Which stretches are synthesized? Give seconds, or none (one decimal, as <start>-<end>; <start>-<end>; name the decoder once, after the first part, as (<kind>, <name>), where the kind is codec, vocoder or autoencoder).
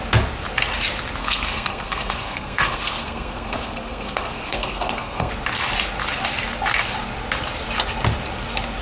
1.2-5.3 (codec, SNAC)